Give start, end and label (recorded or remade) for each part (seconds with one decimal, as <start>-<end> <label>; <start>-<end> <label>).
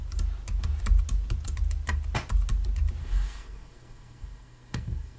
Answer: 0.0-3.0 recorded; 3.0-5.2 remade